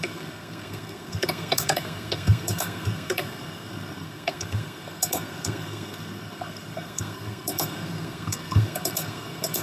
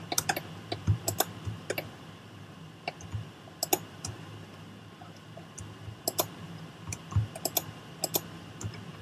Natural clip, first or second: second